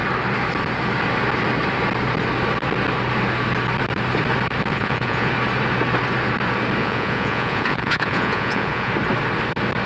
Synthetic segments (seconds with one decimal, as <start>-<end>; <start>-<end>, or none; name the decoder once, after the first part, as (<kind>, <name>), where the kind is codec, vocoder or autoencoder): 4.7-5.3 (vocoder, Vocos); 6.8-8.9

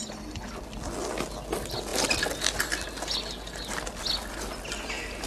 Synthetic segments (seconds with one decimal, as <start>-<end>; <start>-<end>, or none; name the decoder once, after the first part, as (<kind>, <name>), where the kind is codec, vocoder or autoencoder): none

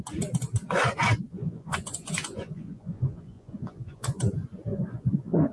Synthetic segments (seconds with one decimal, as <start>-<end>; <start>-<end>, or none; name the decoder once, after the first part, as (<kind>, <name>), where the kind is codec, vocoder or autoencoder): 1.3-4.2 (vocoder, Vocos); 4.7-5.5